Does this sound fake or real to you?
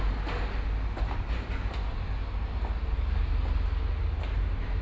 real